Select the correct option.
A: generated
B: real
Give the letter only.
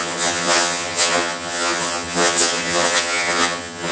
A